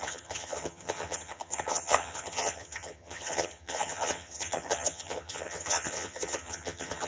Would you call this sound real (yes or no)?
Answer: no